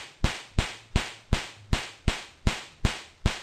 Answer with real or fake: fake